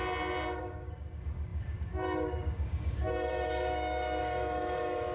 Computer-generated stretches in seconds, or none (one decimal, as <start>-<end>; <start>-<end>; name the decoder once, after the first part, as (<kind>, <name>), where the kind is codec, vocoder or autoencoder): 0.6-5.1 (codec, DAC)